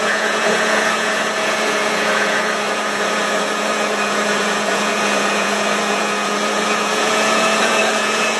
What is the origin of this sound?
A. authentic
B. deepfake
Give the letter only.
B